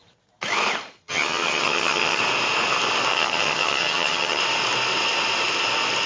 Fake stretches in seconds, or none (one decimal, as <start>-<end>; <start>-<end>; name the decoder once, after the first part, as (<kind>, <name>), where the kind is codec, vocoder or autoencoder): 1.0-2.2 (vocoder, HiFi-GAN); 3.1-4.4